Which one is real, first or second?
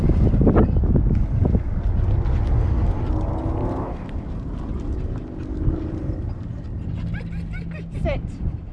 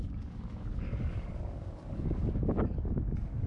first